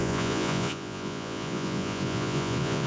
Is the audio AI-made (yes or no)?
yes